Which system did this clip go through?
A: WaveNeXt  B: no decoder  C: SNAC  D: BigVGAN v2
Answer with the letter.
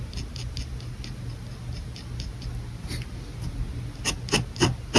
B